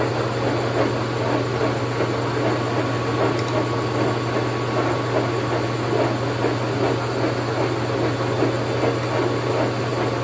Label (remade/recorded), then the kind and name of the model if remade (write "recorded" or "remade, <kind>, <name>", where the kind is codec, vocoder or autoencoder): recorded